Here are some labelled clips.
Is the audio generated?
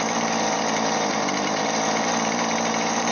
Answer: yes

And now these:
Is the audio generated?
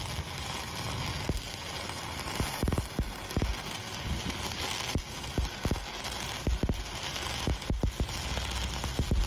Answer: no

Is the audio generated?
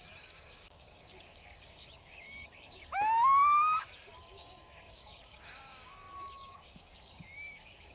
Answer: yes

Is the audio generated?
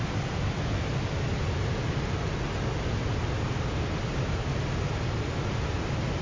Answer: no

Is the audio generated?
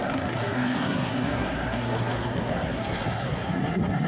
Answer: yes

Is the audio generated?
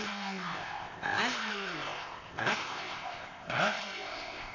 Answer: yes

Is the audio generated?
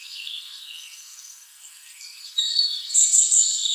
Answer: yes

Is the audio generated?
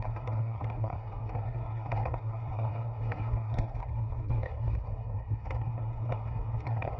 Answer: yes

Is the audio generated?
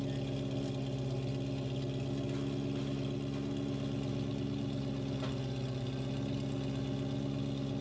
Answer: no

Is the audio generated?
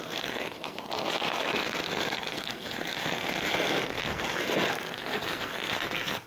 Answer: yes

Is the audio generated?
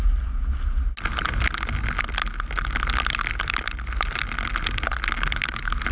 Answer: no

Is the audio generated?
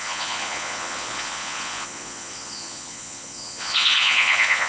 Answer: yes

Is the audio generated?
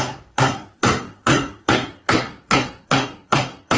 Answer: yes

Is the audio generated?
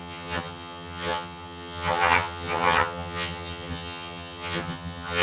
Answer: yes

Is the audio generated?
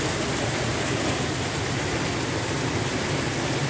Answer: no